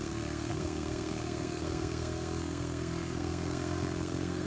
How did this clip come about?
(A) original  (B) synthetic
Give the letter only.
B